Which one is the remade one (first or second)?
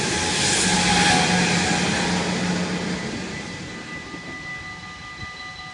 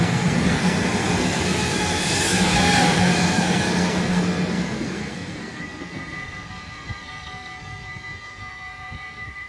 second